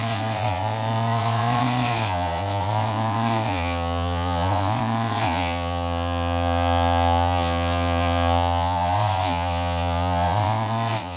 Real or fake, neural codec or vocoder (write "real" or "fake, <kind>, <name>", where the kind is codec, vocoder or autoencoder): fake, vocoder, Vocos